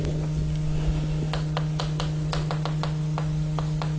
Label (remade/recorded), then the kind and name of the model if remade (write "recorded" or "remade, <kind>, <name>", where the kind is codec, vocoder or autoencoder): recorded